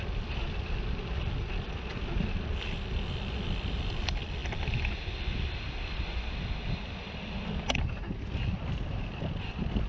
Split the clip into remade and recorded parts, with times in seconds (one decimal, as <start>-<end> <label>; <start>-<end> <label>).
0.0-9.9 recorded